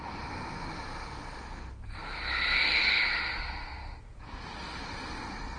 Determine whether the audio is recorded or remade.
recorded